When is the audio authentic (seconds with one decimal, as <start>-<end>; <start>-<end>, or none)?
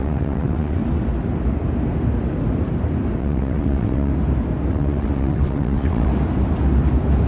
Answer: 0.8-3.2; 4.1-4.7; 6.1-7.3